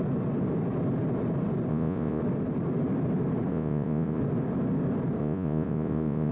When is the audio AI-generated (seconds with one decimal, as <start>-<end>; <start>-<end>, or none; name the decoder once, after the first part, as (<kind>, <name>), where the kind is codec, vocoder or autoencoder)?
1.7-2.2 (vocoder, Vocos); 3.5-4.2; 5.2-6.3